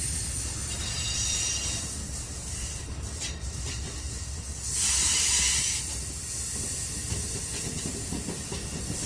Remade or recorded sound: recorded